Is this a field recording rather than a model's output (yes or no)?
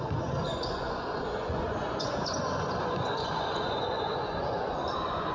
no